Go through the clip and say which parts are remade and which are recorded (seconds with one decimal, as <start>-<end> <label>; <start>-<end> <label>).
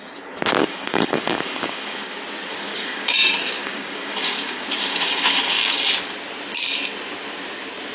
0.0-0.6 recorded; 0.6-2.1 remade; 2.1-2.5 recorded; 2.5-5.9 remade; 5.9-7.9 recorded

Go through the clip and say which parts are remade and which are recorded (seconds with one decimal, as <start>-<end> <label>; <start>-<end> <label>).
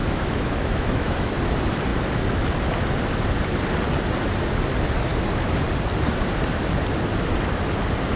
0.0-1.3 remade; 1.3-8.2 recorded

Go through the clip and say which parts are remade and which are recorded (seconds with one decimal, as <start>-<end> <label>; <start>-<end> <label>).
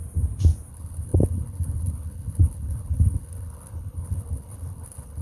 0.0-0.7 recorded; 0.7-5.2 remade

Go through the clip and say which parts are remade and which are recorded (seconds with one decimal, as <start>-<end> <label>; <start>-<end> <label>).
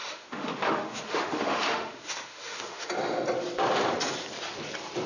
0.0-2.9 remade; 2.9-5.1 recorded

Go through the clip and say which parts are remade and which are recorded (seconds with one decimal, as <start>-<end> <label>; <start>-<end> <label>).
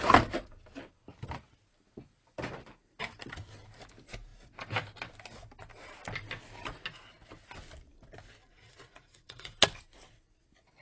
0.0-8.4 recorded; 8.4-9.5 remade; 9.5-10.8 recorded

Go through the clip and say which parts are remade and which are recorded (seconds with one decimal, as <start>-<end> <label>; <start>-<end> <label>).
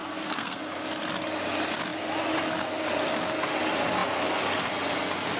0.0-0.6 remade; 0.6-5.4 recorded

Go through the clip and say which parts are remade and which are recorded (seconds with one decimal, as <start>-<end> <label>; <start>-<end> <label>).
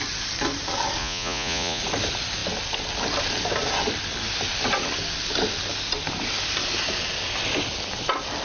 0.0-1.0 recorded; 1.0-1.8 remade; 1.8-8.4 recorded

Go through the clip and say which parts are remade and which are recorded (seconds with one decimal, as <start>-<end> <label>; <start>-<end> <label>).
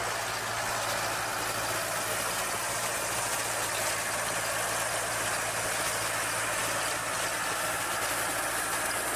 0.0-9.2 recorded